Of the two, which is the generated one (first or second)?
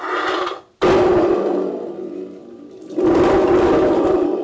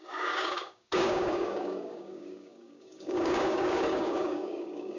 second